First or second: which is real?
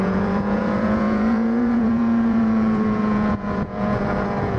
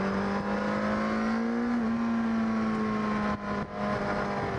second